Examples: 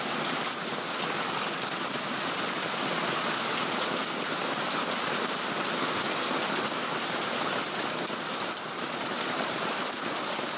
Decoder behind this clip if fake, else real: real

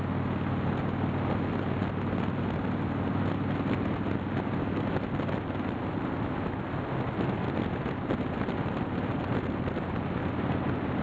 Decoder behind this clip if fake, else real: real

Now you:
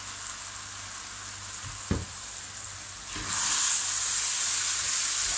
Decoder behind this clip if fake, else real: real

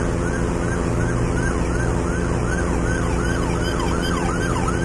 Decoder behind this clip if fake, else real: real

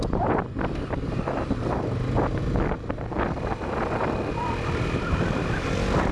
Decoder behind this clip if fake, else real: real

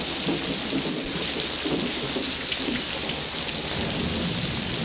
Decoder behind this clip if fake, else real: real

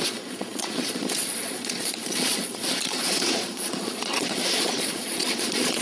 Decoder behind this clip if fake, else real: fake, vocoder, Vocos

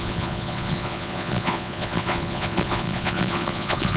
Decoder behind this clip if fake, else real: fake, vocoder, Vocos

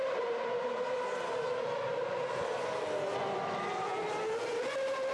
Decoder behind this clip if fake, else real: real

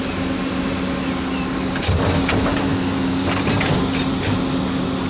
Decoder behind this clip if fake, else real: real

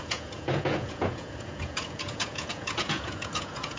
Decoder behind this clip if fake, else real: fake, vocoder, Vocos